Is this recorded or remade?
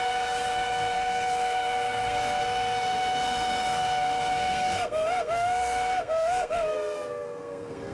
remade